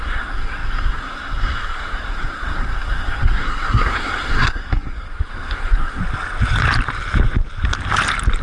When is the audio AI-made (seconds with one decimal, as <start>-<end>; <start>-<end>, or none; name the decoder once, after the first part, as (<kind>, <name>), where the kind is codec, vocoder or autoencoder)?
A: 0.0-6.0 (codec, SNAC)